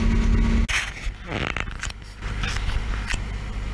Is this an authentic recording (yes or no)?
yes